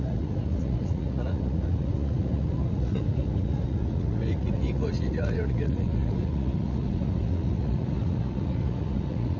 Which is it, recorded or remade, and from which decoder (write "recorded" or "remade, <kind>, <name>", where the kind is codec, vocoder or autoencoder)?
remade, vocoder, Vocos